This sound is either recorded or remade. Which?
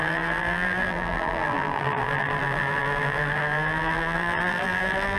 remade